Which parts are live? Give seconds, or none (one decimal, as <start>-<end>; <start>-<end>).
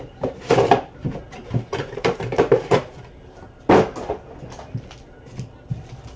0.0-1.0; 3.8-6.2